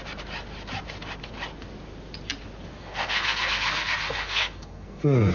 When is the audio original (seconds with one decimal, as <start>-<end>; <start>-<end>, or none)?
0.0-2.7